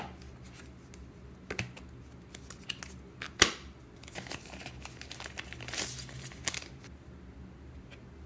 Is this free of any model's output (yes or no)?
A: yes